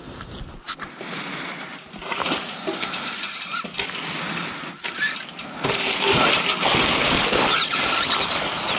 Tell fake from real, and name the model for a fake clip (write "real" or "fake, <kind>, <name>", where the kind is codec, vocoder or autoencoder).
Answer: real